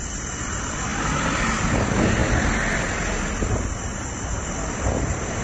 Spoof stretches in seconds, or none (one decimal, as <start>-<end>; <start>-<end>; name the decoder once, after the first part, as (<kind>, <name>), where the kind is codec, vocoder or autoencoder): none